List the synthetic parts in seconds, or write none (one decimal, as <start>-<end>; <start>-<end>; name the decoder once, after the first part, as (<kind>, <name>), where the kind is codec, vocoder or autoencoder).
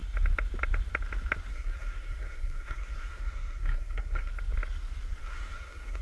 1.5-4.3 (codec, SNAC); 5.2-6.0